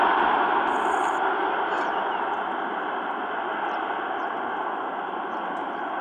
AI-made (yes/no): no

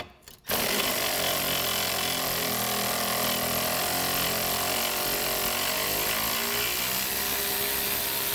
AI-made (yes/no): no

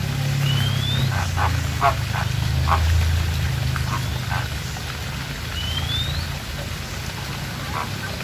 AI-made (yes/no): no